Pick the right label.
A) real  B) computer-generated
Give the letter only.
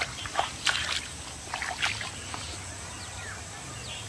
A